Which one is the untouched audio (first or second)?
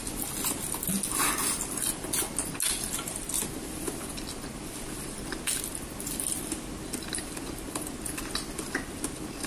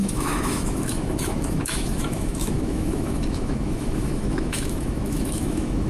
first